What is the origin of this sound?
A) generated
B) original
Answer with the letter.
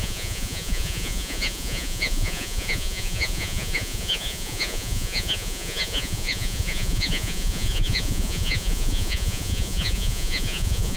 A